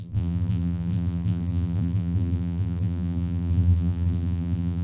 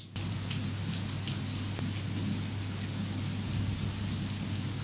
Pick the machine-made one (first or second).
first